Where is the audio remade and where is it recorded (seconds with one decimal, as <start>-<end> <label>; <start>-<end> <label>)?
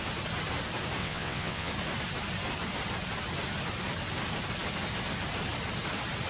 0.0-1.0 recorded; 1.0-1.7 remade; 1.7-6.3 recorded